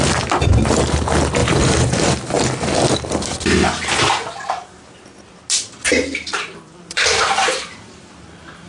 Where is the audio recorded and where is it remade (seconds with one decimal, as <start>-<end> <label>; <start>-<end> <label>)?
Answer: 0.0-1.4 recorded; 1.4-2.1 remade; 2.1-5.8 recorded; 5.8-8.7 remade